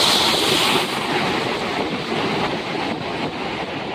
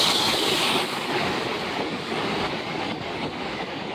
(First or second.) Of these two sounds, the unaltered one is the first